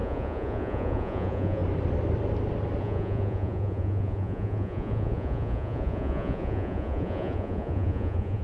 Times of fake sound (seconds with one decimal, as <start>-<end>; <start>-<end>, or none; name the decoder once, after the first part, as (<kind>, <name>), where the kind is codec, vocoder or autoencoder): 0.0-1.6 (vocoder, Vocos); 2.8-8.4